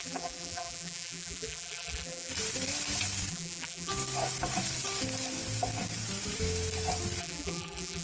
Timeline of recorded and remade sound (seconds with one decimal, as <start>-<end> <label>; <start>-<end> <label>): 0.0-2.3 remade; 2.3-3.3 recorded; 3.3-3.9 remade; 3.9-7.2 recorded; 7.2-8.0 remade